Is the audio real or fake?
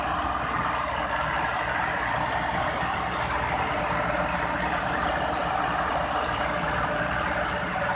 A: fake